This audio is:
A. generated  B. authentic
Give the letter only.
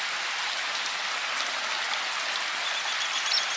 B